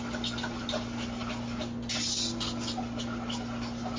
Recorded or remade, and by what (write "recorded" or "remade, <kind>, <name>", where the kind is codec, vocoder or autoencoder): recorded